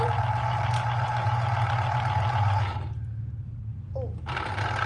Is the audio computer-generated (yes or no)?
no